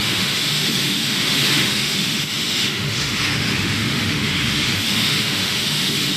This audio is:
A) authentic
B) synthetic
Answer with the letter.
B